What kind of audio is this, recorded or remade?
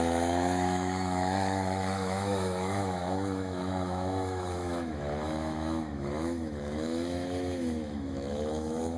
remade